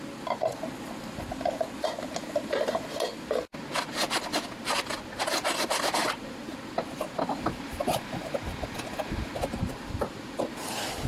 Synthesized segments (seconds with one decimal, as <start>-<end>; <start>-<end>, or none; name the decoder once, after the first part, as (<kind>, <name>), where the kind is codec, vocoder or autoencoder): none